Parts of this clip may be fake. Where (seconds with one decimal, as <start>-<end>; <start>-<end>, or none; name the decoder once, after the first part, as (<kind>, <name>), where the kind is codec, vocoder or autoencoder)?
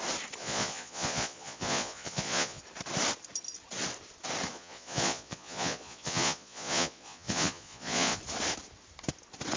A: 0.4-2.6 (vocoder, Vocos); 4.5-8.2